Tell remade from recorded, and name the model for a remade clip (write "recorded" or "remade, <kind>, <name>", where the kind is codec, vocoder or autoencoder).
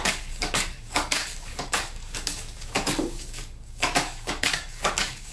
remade, codec, DAC